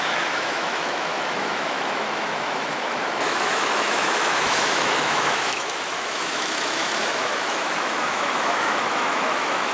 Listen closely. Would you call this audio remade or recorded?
remade